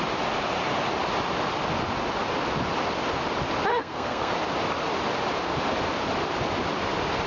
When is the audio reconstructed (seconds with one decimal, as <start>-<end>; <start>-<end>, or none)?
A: 3.7-4.3

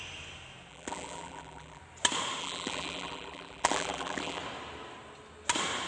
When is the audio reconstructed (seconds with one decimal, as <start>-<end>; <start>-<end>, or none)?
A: 0.7-1.8; 2.4-4.4

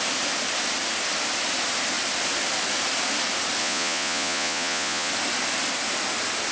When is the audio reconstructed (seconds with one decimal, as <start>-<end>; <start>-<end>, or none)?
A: 3.6-5.1

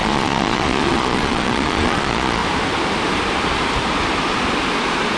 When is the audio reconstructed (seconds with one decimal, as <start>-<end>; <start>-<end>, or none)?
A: 0.0-2.4

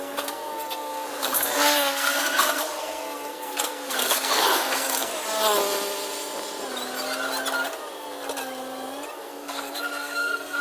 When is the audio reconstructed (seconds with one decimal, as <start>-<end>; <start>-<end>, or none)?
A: 0.0-5.1; 9.1-10.6

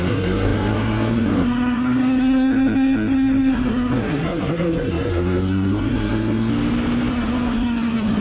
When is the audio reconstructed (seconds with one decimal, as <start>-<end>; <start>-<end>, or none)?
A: 0.0-6.5; 7.1-8.2

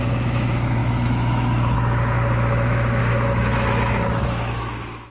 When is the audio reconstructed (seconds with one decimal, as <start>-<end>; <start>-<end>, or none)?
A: 0.0-5.1